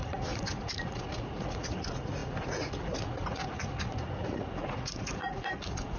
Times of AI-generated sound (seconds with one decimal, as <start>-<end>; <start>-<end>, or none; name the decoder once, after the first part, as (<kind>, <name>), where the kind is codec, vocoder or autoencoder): 0.0-6.0 (vocoder, Vocos)